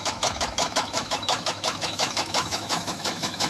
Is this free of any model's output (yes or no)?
no